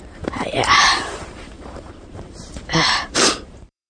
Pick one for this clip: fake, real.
fake